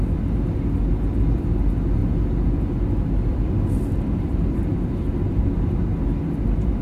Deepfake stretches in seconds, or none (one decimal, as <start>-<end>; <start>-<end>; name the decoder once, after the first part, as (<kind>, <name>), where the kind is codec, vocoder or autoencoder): 3.3-5.7 (vocoder, BigVGAN v2)